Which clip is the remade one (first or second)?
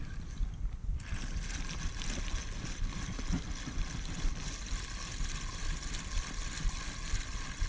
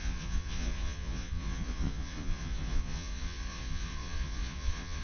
second